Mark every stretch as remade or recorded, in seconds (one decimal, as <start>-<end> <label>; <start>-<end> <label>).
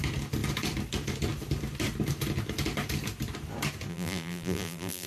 0.0-3.9 recorded; 3.9-5.1 remade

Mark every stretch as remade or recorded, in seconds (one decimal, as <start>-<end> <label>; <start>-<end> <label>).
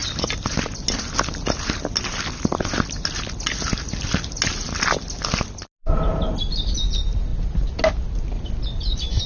0.0-9.3 recorded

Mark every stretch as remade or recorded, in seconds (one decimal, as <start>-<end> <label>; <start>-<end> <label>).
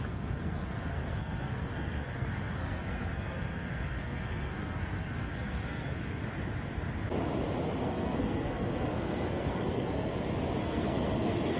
0.0-6.2 remade; 6.2-7.8 recorded; 7.8-10.1 remade; 10.1-10.6 recorded; 10.6-11.6 remade